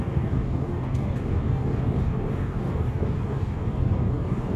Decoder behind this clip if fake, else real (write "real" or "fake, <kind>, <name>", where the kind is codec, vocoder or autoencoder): fake, codec, DAC